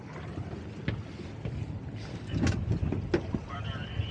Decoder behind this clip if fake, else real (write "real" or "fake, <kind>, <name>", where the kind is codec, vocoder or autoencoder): real